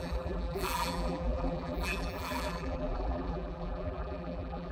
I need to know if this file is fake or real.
fake